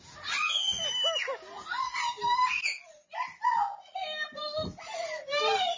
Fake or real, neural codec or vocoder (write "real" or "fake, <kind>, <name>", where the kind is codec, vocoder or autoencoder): real